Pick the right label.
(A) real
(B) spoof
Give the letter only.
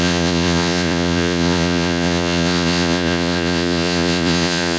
B